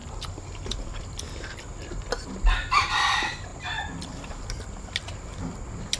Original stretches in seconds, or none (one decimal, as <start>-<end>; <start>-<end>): 0.0-6.0